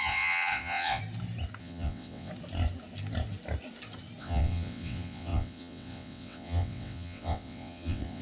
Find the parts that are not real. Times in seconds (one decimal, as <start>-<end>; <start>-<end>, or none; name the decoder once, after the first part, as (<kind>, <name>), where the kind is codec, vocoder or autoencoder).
0.0-1.0 (vocoder, WaveNeXt); 1.6-2.3; 4.2-8.2